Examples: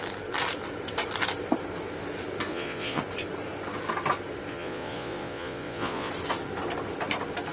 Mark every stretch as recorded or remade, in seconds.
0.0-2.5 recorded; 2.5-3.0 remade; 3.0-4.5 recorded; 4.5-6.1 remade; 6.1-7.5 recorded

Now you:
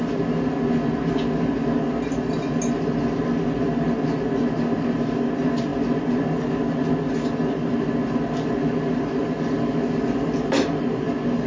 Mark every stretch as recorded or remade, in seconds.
0.0-11.5 recorded

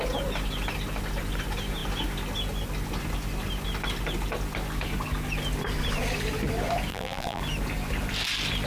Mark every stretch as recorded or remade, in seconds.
0.0-6.9 recorded; 6.9-7.4 remade; 7.4-8.7 recorded

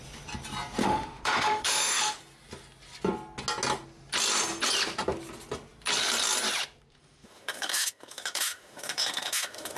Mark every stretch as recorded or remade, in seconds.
0.0-0.8 recorded; 0.8-2.2 remade; 2.2-6.9 recorded; 6.9-9.8 remade

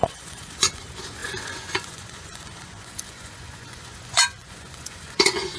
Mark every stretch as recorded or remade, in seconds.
0.0-5.6 remade